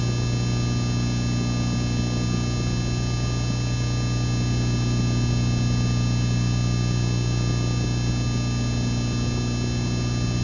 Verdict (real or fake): real